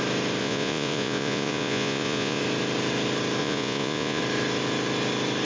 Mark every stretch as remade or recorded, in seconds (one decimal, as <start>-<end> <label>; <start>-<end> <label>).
0.0-0.4 recorded; 0.4-2.4 remade; 2.4-3.4 recorded; 3.4-4.2 remade; 4.2-5.4 recorded